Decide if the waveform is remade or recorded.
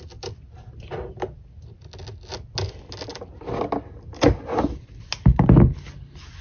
recorded